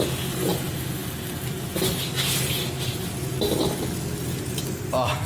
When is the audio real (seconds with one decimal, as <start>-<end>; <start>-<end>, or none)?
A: 0.0-5.3